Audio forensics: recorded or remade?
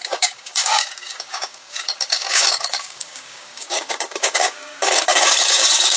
remade